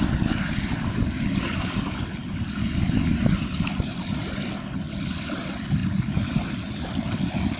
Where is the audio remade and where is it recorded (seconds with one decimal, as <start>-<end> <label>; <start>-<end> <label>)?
0.0-7.6 recorded